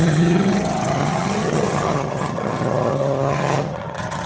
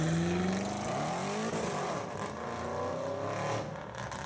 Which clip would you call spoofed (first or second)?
first